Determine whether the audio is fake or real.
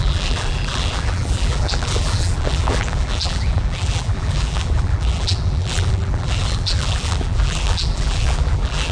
fake